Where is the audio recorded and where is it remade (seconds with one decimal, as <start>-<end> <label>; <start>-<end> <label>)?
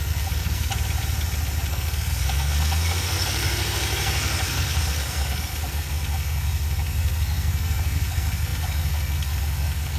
0.0-0.7 remade; 0.7-1.7 recorded; 1.7-10.0 remade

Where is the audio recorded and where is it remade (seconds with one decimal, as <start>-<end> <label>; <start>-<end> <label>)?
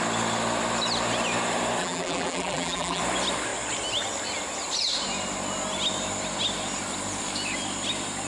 0.0-1.8 recorded; 1.8-3.0 remade; 3.0-8.3 recorded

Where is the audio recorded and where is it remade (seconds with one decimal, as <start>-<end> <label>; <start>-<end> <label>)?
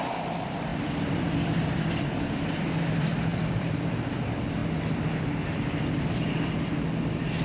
0.0-4.6 remade; 4.6-7.4 recorded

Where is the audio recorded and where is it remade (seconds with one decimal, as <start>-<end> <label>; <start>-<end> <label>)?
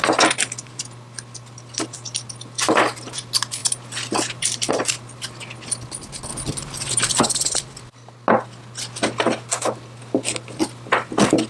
0.0-3.6 recorded; 3.6-4.7 remade; 4.7-6.3 recorded; 6.3-7.2 remade; 7.2-11.5 recorded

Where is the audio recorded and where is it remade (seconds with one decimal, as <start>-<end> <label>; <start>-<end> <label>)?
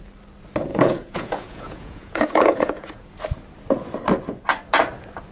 0.0-0.7 recorded; 0.7-3.2 remade; 3.2-5.3 recorded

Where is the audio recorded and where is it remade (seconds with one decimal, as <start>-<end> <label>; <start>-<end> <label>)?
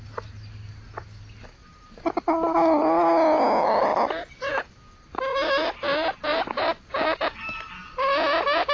0.0-1.6 recorded; 1.6-2.1 remade; 2.1-5.3 recorded; 5.3-6.8 remade; 6.8-8.7 recorded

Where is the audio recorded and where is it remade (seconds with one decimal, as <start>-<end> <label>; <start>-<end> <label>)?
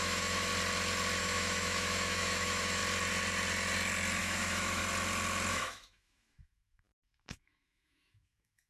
0.0-0.5 remade; 0.5-1.2 recorded; 1.2-2.8 remade; 2.8-4.2 recorded; 4.2-4.8 remade; 4.8-5.5 recorded; 5.5-8.7 remade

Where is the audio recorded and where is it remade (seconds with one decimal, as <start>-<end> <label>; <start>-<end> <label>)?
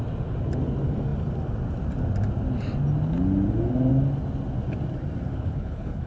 0.0-5.3 recorded; 5.3-6.1 remade